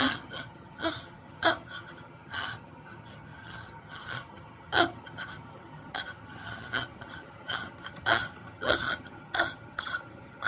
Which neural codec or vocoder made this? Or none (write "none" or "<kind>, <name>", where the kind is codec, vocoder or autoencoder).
vocoder, HiFi-GAN